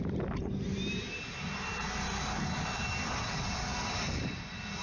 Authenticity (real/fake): real